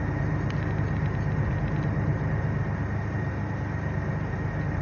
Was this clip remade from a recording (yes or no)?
no